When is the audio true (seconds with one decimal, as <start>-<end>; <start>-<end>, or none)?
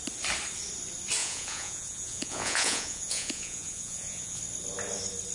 0.0-1.2; 4.4-5.3